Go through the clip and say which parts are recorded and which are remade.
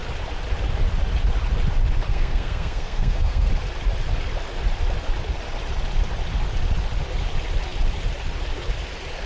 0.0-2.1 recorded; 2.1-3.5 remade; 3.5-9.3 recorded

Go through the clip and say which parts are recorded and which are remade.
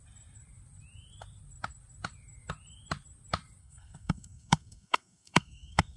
0.0-3.6 recorded; 3.6-6.0 remade